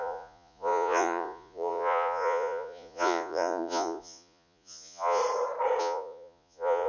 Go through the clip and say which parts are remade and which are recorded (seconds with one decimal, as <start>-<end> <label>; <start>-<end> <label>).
0.0-5.2 remade; 5.2-5.8 recorded; 5.8-6.9 remade